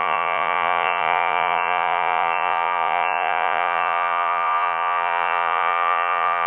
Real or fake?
fake